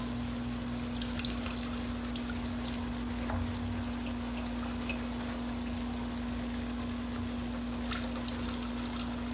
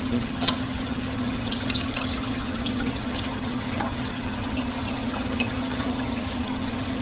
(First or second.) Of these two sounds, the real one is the first